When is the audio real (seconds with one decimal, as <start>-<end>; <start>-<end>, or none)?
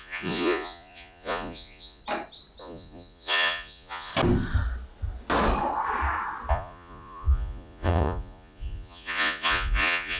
2.0-2.6; 4.1-6.5